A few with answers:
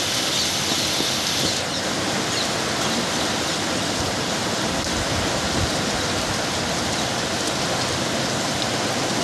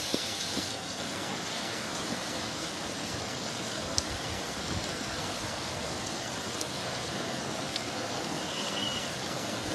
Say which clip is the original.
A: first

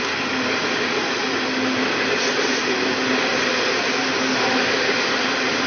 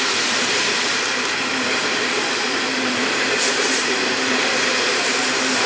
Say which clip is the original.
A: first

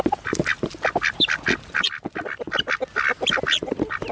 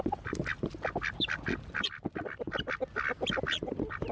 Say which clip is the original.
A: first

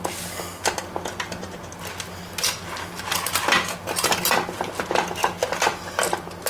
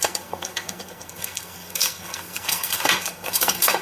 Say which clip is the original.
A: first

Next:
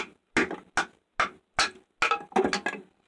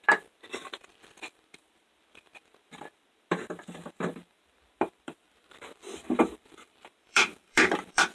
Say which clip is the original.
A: first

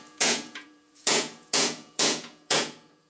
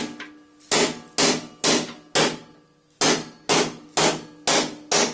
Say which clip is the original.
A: second